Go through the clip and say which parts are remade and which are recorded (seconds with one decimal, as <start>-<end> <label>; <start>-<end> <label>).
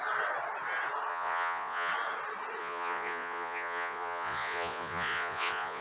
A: 0.0-1.1 recorded; 1.1-1.9 remade; 1.9-2.6 recorded; 2.6-5.8 remade